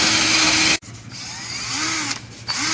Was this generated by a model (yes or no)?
no